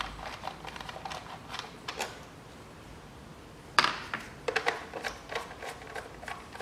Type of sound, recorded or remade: remade